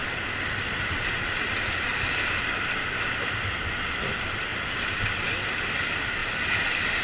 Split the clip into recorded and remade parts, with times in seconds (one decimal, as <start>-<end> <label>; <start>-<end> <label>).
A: 0.0-6.2 recorded; 6.2-7.0 remade